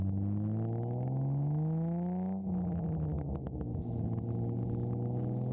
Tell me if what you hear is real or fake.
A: real